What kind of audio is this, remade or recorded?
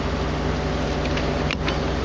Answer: recorded